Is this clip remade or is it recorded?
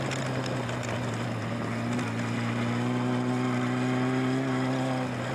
recorded